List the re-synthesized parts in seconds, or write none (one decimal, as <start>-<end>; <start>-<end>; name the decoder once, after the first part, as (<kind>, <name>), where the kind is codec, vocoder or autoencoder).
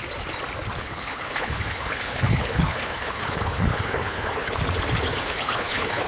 0.8-4.5 (codec, HILCodec); 5.1-6.1